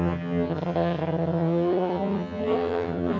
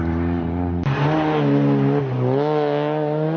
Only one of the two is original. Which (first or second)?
second